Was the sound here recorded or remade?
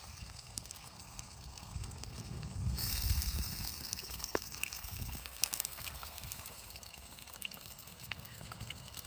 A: remade